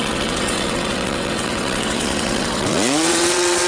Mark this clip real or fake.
fake